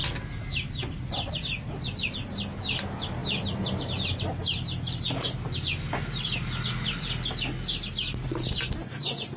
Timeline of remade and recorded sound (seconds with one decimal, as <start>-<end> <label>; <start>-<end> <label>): 0.0-9.4 recorded